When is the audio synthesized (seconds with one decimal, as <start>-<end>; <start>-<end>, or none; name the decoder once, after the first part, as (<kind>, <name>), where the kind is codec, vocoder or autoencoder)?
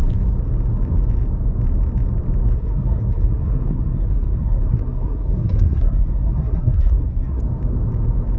2.5-7.4 (codec, SNAC)